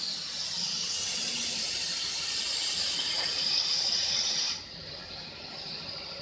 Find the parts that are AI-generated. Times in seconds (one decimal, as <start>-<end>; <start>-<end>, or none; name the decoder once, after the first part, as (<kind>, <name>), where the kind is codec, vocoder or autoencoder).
none

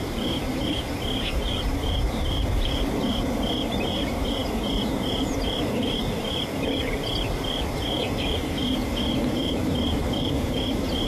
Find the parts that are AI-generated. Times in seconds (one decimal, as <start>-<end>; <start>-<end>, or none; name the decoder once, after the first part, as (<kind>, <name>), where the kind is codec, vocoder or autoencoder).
0.0-8.6 (vocoder, BigVGAN v2); 9.1-11.1

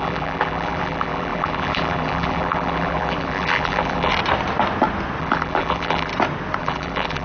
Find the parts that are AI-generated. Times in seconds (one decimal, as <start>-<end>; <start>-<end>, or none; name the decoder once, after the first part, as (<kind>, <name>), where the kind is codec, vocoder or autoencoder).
0.0-4.1 (vocoder, BigVGAN v2); 5.2-6.1; 6.6-7.2

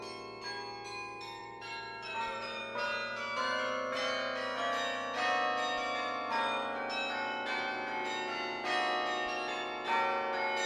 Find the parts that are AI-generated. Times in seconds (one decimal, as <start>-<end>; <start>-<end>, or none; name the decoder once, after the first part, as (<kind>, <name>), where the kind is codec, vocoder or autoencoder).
1.4-2.6 (vocoder, BigVGAN v2)

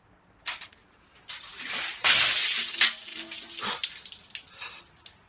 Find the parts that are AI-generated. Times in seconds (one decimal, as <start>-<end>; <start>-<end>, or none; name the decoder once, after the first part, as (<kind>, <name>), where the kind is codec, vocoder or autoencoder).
0.8-2.4 (vocoder, BigVGAN v2); 3.1-4.1